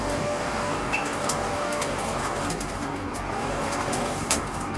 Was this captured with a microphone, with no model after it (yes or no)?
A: no